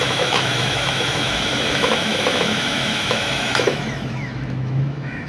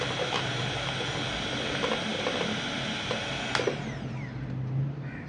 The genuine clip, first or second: second